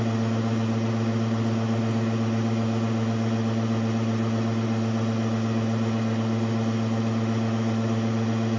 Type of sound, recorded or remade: recorded